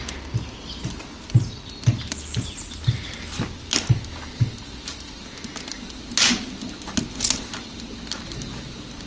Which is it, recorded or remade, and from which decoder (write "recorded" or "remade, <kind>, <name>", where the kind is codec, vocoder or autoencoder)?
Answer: recorded